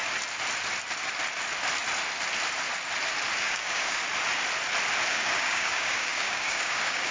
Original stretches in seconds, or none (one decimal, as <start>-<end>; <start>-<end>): 0.0-3.4; 4.0-5.1